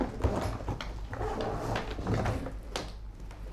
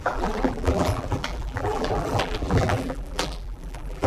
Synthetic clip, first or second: second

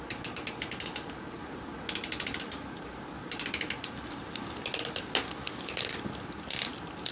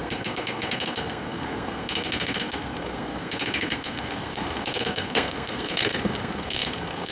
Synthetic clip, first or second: second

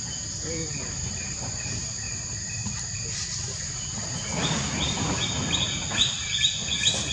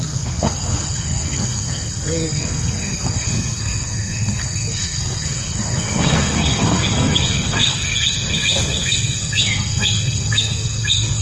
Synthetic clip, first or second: second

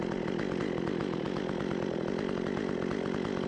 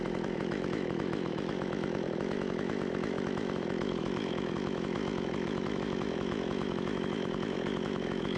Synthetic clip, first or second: second